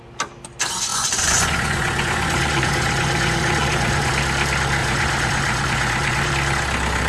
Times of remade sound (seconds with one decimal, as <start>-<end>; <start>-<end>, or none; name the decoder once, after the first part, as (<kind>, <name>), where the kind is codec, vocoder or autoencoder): 0.9-4.1 (vocoder, Vocos); 4.8-6.3